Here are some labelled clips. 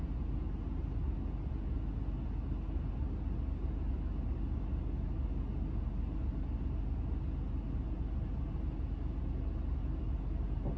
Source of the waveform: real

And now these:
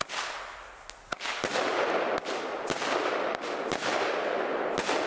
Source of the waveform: real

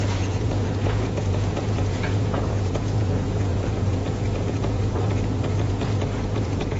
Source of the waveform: fake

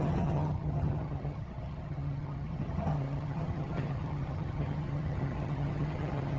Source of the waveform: fake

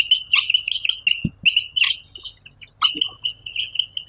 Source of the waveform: real